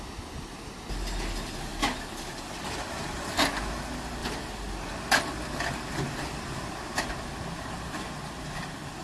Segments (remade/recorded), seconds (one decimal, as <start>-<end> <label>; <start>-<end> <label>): 0.0-9.0 recorded